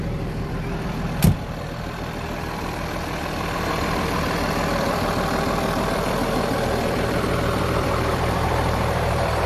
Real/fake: fake